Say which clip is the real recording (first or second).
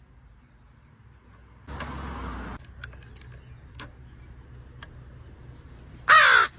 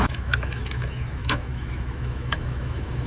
first